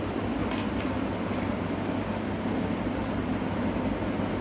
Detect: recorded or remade recorded